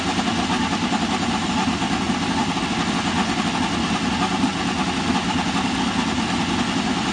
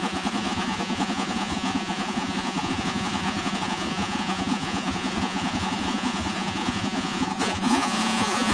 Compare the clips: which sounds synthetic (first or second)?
second